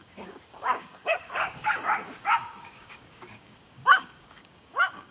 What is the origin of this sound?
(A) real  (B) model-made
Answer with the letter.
B